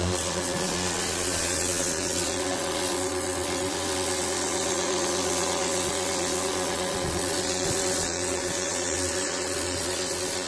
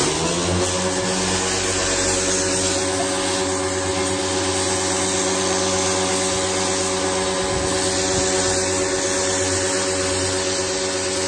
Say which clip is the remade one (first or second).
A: first